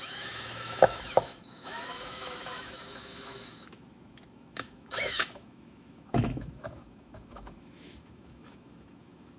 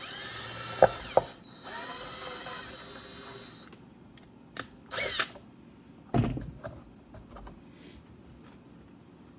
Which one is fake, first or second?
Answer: first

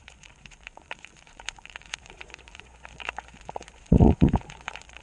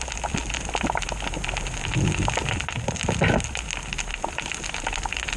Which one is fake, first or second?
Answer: first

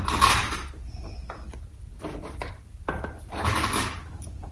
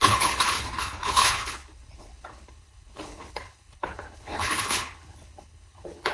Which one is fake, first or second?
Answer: second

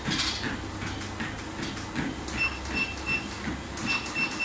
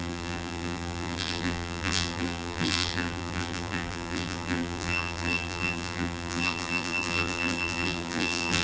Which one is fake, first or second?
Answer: second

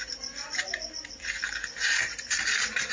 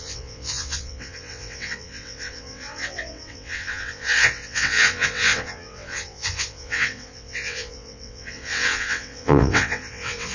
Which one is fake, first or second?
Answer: second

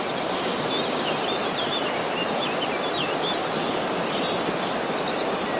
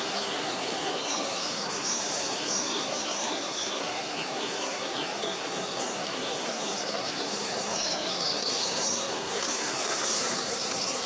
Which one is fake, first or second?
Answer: second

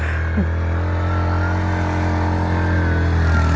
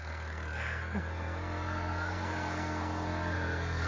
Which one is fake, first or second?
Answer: second